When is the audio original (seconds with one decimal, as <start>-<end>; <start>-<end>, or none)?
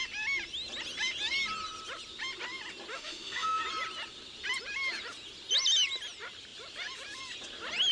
0.0-2.9; 3.6-7.9